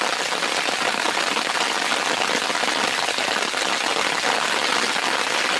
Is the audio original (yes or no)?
yes